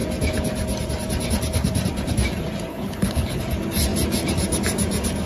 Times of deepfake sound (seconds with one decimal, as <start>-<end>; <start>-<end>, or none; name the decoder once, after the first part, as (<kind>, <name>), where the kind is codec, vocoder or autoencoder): 2.7-3.4 (codec, HILCodec)